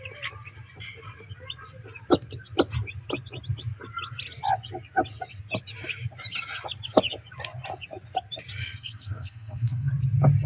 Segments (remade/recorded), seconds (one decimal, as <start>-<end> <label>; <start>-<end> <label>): 0.0-8.6 recorded; 8.6-9.9 remade; 9.9-10.5 recorded